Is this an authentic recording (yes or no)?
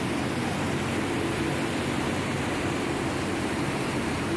yes